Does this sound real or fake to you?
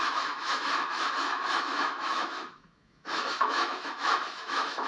fake